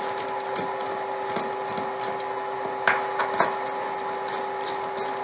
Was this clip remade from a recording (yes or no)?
no